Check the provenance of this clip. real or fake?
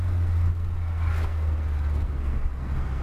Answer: fake